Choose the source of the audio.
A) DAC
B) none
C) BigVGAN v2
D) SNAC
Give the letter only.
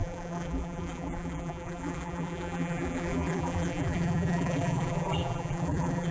C